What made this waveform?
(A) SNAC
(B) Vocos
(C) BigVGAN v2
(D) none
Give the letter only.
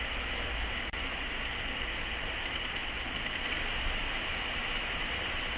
D